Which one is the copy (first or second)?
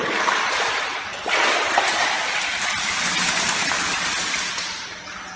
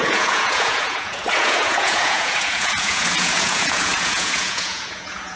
second